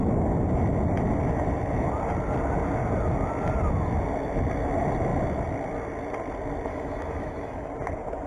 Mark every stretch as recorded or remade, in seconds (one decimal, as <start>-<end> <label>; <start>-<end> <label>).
0.0-6.7 recorded; 6.7-7.7 remade; 7.7-8.3 recorded